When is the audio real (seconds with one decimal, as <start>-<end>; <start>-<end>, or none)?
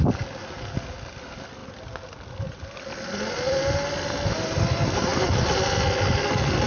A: 0.0-6.7